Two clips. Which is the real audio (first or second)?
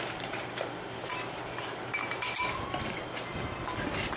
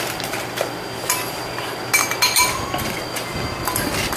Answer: second